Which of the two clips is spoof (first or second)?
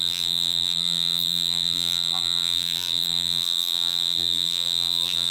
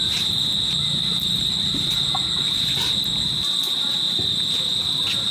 first